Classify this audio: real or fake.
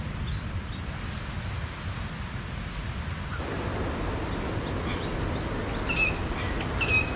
real